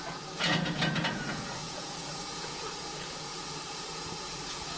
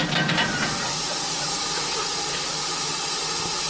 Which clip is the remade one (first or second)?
first